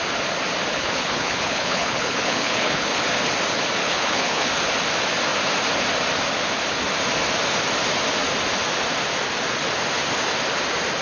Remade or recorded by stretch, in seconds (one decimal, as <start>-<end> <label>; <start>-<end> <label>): 0.0-0.7 recorded; 0.7-3.0 remade; 3.0-3.8 recorded; 3.8-4.5 remade; 4.5-11.0 recorded